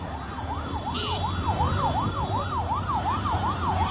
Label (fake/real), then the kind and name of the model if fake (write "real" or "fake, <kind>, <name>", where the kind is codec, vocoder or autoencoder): real